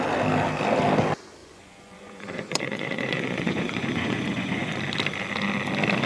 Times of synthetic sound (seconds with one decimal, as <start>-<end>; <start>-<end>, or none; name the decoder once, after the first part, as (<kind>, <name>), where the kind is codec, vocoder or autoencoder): 1.4-4.7 (vocoder, Vocos)

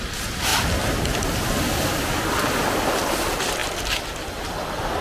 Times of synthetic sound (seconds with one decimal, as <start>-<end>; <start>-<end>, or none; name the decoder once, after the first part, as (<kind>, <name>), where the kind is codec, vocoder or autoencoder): none

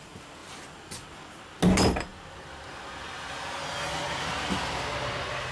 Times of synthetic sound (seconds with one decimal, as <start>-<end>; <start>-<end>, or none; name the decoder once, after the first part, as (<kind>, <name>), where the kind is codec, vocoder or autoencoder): 0.4-1.4 (vocoder, BigVGAN v2)

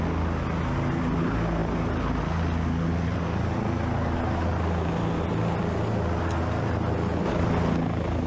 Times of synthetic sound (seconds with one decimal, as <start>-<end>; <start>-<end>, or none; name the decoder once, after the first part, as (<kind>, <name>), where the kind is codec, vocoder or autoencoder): none

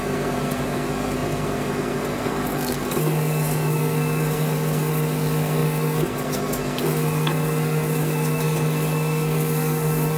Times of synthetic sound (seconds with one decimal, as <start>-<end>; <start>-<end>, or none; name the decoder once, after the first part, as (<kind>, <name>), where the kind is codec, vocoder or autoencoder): 0.0-10.2 (codec, SNAC)

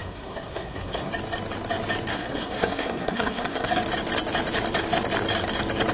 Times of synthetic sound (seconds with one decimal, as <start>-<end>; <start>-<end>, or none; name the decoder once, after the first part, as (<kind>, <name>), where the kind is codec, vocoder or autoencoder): 0.0-1.1 (codec, SNAC); 2.1-3.7

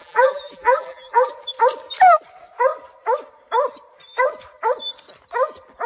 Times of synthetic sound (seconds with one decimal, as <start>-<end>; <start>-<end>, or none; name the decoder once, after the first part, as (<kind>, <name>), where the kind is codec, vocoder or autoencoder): 0.0-1.3 (vocoder, BigVGAN v2)

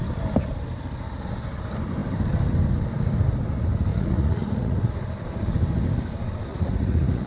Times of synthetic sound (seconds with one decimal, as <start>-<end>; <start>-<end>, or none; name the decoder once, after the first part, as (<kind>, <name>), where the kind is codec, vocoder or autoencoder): 3.9-4.9 (vocoder, Vocos); 6.5-7.3